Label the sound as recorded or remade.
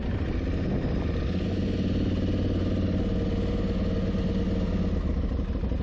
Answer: recorded